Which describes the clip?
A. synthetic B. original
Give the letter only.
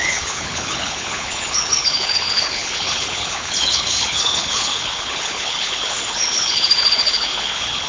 A